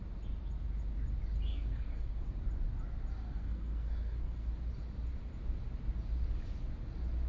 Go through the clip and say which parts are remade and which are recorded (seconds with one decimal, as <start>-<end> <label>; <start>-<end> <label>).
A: 0.0-1.5 recorded; 1.5-2.3 remade; 2.3-3.2 recorded; 3.2-4.5 remade; 4.5-7.3 recorded